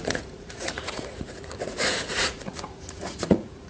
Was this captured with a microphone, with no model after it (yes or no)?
no